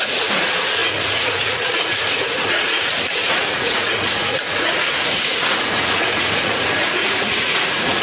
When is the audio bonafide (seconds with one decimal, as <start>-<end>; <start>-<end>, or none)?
none